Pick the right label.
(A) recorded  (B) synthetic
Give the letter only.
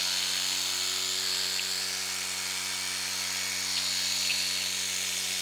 A